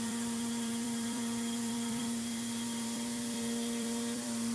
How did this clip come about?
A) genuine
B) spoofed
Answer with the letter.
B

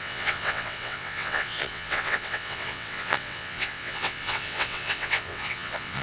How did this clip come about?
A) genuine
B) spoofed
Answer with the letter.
B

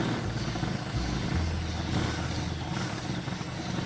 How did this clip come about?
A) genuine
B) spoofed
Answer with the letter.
A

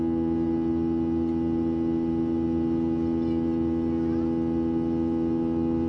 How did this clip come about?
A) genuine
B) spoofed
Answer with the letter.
A